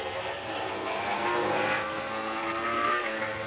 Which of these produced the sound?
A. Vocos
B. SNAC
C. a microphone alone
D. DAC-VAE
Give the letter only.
B